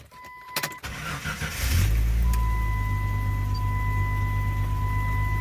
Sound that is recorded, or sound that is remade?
recorded